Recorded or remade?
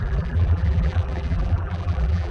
remade